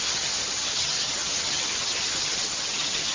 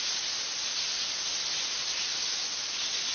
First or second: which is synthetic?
first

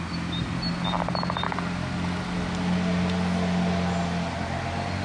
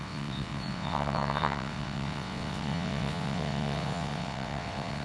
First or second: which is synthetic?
second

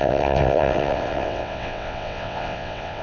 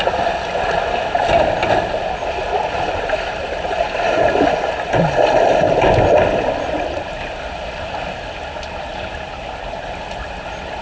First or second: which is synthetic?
first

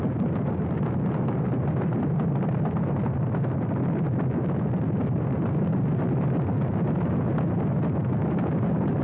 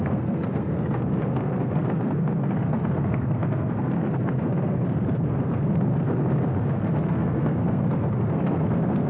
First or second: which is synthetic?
second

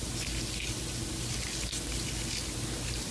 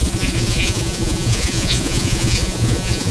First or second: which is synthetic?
second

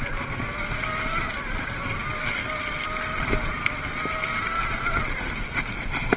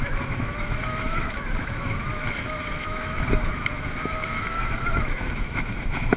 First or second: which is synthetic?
second